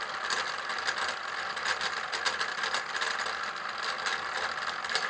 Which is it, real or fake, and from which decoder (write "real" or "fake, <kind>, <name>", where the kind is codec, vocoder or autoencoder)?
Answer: real